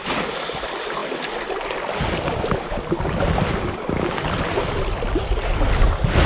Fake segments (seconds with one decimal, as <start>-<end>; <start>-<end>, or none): none